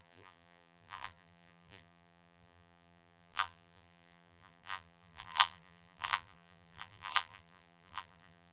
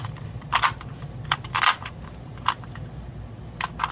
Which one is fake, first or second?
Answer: first